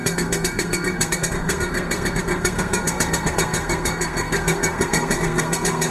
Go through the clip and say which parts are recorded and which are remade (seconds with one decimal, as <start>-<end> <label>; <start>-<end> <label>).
0.0-5.9 remade